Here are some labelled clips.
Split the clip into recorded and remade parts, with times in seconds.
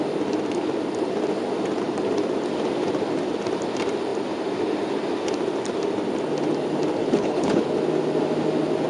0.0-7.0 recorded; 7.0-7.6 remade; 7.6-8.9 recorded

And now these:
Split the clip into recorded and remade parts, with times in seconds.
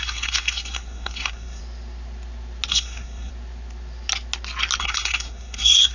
0.0-1.6 remade; 1.6-2.7 recorded; 2.7-3.3 remade; 3.3-4.8 recorded; 4.8-5.9 remade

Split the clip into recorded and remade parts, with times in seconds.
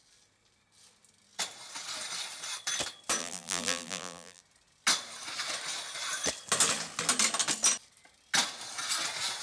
0.0-3.2 recorded; 3.2-4.4 remade; 4.4-9.4 recorded